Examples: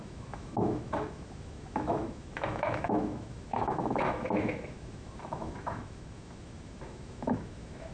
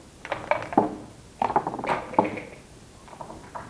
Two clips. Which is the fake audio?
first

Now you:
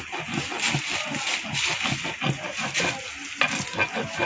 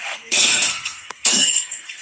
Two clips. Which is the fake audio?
second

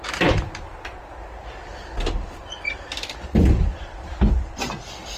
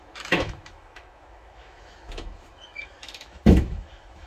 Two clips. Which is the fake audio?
second